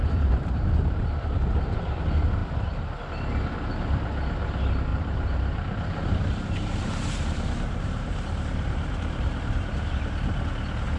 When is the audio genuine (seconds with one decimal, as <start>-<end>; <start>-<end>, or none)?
2.0-4.9; 9.9-11.0